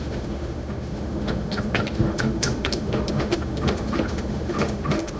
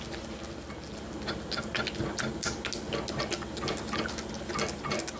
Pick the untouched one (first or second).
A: second